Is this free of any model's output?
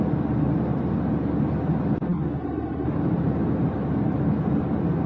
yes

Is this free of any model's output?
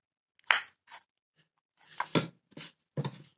yes